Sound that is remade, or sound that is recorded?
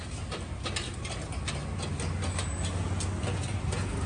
recorded